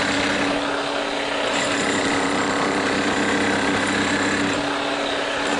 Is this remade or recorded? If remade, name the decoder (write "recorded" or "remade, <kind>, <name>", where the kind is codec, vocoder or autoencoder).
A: recorded